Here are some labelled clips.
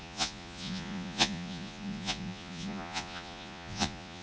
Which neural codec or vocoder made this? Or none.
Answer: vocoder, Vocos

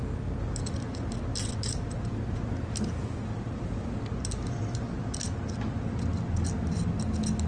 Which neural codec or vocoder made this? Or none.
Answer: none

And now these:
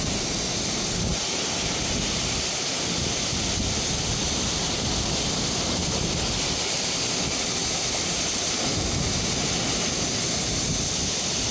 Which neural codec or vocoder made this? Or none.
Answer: none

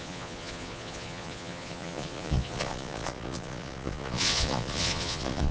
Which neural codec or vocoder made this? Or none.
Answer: vocoder, Vocos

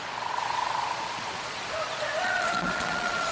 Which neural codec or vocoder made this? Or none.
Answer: vocoder, Vocos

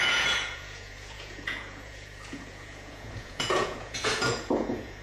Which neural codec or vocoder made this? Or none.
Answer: vocoder, Vocos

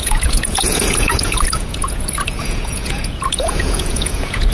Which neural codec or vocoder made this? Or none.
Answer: vocoder, Vocos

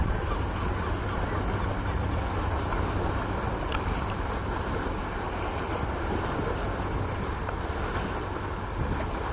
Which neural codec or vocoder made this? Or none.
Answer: none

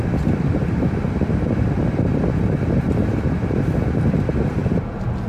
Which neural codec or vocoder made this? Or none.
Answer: none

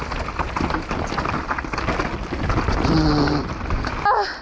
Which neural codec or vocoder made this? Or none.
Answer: none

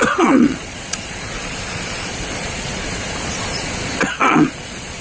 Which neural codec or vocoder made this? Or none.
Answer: vocoder, Vocos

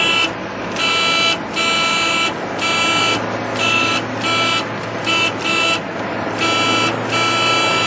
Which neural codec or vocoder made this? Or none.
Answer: none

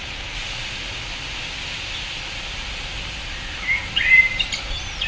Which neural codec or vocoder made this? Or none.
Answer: none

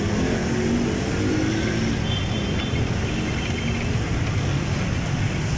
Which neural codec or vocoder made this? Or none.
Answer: none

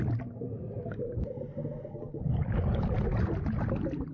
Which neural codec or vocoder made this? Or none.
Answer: none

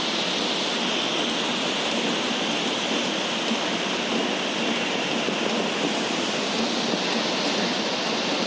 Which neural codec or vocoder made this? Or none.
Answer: none